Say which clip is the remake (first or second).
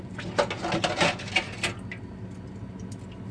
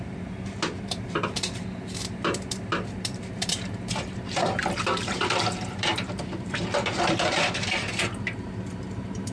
second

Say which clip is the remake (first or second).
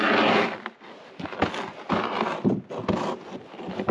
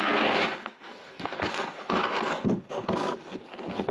second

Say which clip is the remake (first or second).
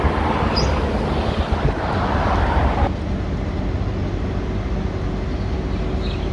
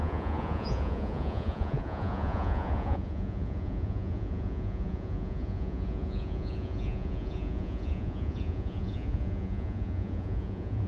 second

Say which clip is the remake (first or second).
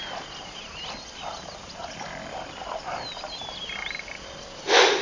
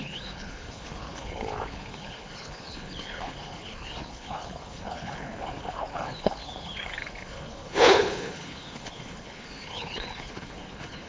second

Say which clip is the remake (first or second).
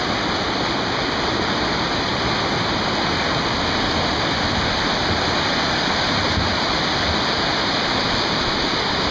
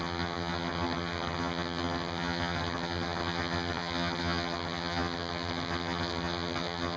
second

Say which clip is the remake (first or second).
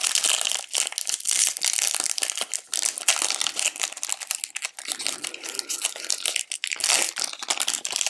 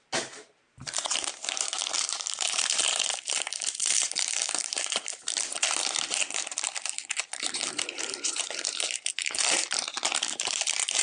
second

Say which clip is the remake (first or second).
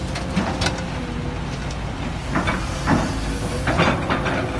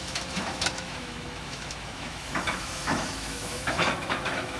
second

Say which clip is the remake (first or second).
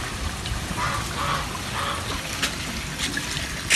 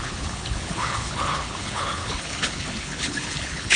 second